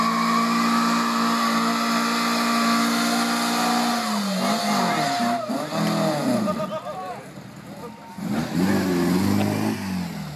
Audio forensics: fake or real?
real